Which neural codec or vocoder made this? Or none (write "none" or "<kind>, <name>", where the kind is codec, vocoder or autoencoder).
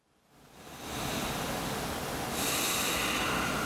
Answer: none